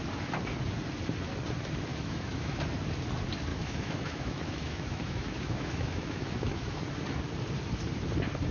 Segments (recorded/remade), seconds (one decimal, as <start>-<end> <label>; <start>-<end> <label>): 0.0-1.9 recorded; 1.9-2.6 remade; 2.6-3.5 recorded; 3.5-6.8 remade; 6.8-8.5 recorded